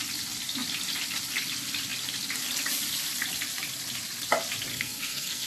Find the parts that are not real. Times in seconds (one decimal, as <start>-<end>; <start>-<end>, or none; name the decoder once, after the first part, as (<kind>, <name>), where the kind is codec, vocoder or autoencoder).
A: 4.7-5.5 (codec, SNAC)